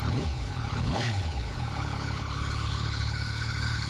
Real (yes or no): no